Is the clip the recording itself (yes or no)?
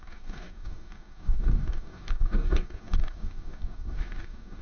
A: no